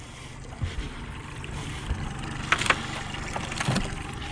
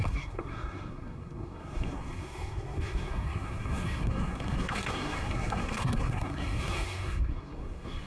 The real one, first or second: first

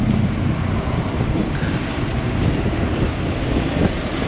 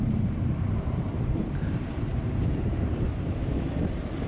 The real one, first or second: first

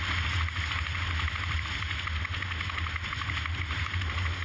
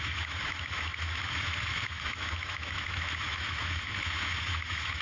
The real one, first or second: first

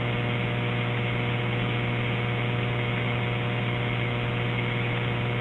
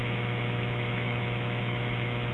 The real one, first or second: first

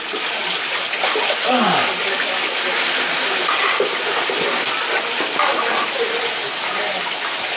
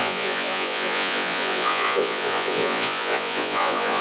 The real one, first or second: first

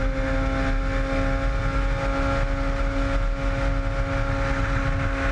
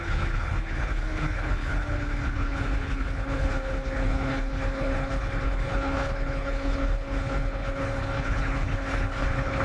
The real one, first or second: first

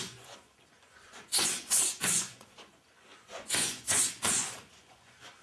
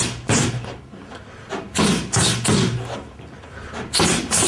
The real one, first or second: second